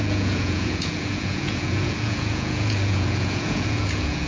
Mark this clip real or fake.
fake